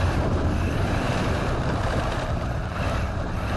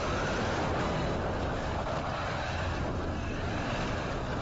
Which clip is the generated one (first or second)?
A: first